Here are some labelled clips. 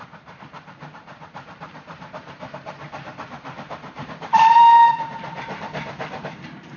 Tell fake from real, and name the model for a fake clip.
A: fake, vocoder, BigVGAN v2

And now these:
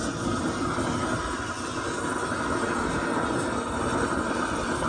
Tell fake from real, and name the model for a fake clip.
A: real